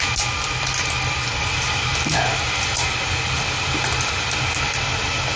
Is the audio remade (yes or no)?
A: no